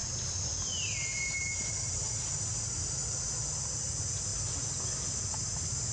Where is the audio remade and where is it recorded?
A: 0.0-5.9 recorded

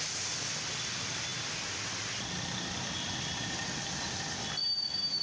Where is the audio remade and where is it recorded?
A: 0.0-5.2 recorded

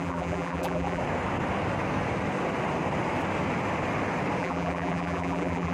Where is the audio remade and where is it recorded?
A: 0.0-1.0 remade; 1.0-4.4 recorded; 4.4-5.7 remade

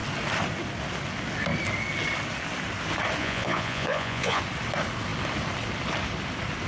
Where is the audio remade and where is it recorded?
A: 0.0-3.2 recorded; 3.2-4.4 remade; 4.4-6.7 recorded

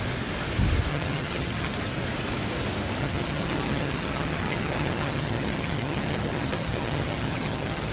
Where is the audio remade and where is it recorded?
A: 0.0-0.9 recorded; 0.9-1.7 remade; 1.7-3.0 recorded; 3.0-7.9 remade

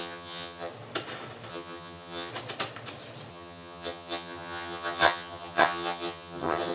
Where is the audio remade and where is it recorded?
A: 0.0-0.7 remade; 0.7-1.5 recorded; 1.5-2.3 remade; 2.3-3.3 recorded; 3.3-6.7 remade